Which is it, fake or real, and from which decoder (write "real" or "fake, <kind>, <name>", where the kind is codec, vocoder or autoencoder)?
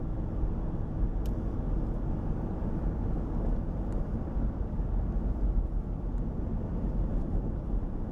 real